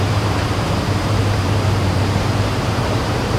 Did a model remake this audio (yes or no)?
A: yes